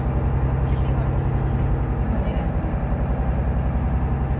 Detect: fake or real real